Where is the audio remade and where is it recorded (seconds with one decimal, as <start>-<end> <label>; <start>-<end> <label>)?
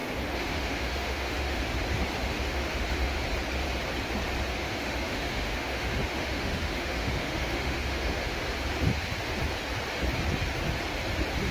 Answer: 0.0-1.6 remade; 1.6-2.2 recorded; 2.2-3.2 remade; 3.2-4.6 recorded; 4.6-8.4 remade; 8.4-11.5 recorded